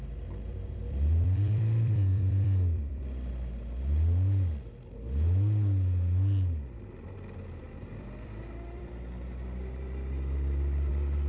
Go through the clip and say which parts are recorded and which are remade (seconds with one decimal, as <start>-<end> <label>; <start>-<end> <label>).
0.0-0.5 recorded; 0.5-3.3 remade; 3.3-7.6 recorded; 7.6-10.9 remade; 10.9-11.3 recorded